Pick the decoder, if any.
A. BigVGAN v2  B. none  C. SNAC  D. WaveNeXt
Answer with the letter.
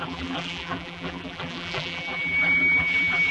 A